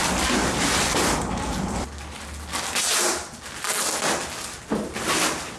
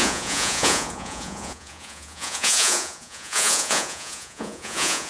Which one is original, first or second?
first